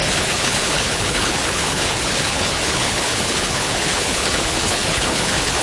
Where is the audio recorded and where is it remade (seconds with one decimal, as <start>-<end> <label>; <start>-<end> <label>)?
0.0-5.6 remade